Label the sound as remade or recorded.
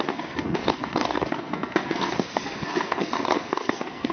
remade